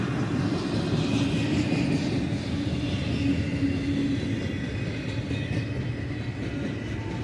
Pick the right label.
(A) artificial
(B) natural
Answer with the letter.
B